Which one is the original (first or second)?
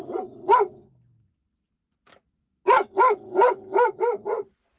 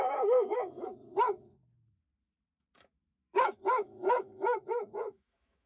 first